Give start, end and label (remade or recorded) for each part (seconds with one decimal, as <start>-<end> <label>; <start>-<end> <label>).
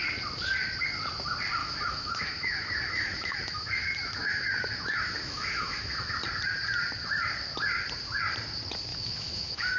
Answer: 0.0-1.6 recorded; 1.6-6.1 remade; 6.1-8.9 recorded; 8.9-9.8 remade